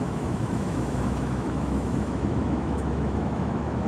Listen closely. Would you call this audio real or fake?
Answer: fake